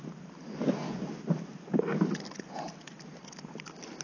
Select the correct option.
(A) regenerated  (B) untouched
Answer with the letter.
B